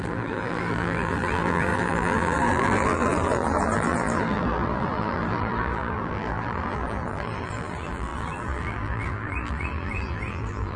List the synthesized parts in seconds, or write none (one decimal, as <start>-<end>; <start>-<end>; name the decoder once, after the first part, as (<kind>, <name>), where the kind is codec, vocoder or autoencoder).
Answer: 0.0-10.8 (vocoder, BigVGAN v2)